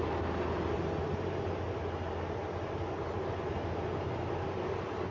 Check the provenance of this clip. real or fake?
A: real